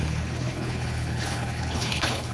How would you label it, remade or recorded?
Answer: remade